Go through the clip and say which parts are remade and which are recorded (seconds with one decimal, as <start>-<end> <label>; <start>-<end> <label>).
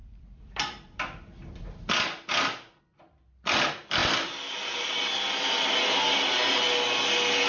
0.0-2.8 remade; 2.8-4.0 recorded; 4.0-4.5 remade; 4.5-7.5 recorded